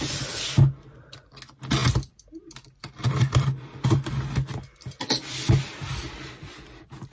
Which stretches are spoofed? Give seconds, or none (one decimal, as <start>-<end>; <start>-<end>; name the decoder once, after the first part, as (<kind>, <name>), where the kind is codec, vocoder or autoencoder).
none